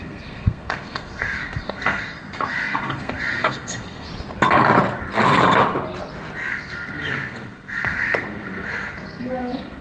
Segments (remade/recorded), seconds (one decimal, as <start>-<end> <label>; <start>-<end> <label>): 0.0-4.1 remade; 4.1-6.5 recorded; 6.5-9.8 remade